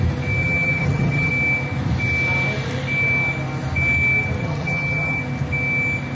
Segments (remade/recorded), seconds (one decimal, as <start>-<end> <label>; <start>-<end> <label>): 0.0-0.4 recorded; 0.4-1.3 remade; 1.3-4.4 recorded; 4.4-5.2 remade; 5.2-6.1 recorded